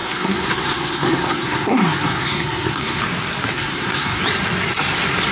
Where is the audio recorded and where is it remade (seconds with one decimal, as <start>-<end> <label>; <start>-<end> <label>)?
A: 0.0-3.0 remade; 3.0-3.5 recorded; 3.5-4.2 remade; 4.2-5.3 recorded